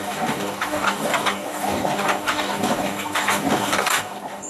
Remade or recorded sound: remade